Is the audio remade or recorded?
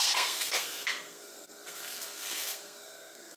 remade